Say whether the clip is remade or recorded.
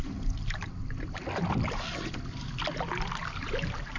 recorded